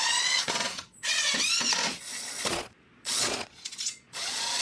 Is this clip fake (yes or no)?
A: yes